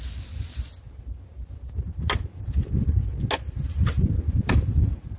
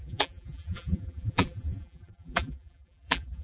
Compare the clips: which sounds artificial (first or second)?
second